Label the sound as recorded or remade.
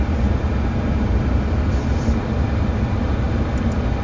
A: recorded